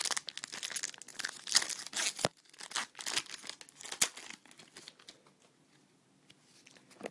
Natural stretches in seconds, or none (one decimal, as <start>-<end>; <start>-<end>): 0.0-7.1